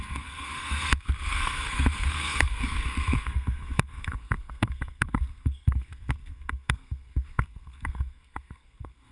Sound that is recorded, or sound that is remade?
remade